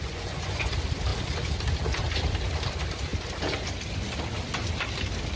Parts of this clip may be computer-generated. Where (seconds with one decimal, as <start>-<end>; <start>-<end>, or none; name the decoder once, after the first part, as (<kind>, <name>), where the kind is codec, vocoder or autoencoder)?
0.0-0.7 (vocoder, Vocos)